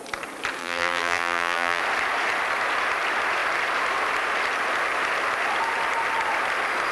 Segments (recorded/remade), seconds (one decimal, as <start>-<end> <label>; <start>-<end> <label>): 0.0-0.6 recorded; 0.6-1.8 remade; 1.8-6.9 recorded